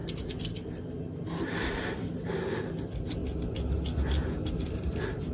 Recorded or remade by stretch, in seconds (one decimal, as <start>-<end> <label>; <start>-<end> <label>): 0.0-5.3 recorded